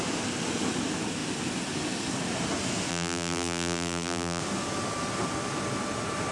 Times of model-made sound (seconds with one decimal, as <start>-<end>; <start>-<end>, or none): 2.9-4.4